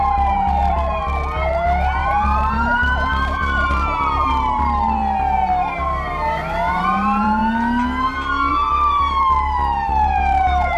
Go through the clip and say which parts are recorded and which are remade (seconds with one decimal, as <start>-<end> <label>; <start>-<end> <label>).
0.0-1.0 remade; 1.0-2.0 recorded; 2.0-5.0 remade; 5.0-6.7 recorded; 6.7-7.4 remade; 7.4-8.5 recorded; 8.5-10.8 remade